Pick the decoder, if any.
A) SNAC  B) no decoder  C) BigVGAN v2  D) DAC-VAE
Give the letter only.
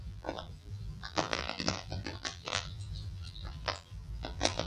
C